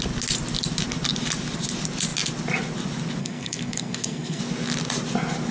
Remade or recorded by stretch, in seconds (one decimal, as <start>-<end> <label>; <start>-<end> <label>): 0.0-3.2 recorded; 3.2-4.4 remade; 4.4-5.5 recorded